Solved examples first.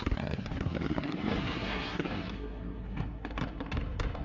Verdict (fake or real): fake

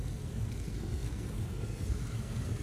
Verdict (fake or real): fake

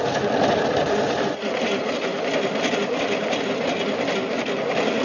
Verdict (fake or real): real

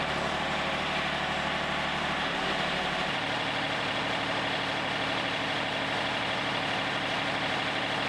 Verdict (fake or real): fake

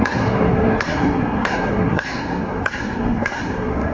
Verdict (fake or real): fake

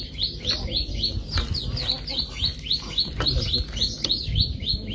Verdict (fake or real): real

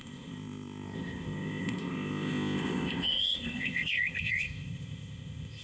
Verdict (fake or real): fake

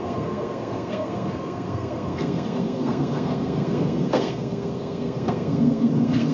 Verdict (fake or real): fake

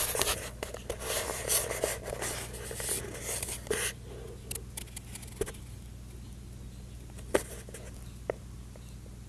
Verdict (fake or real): real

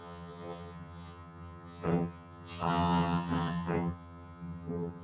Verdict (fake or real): fake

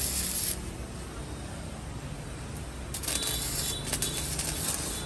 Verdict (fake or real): real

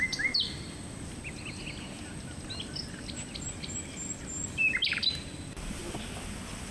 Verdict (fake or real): real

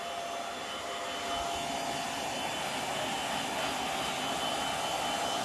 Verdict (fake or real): real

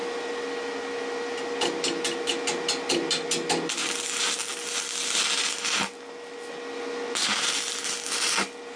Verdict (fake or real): real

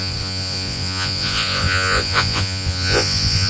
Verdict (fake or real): fake